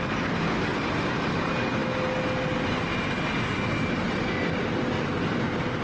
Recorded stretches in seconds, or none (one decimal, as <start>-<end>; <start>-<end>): 0.0-0.7; 1.3-5.8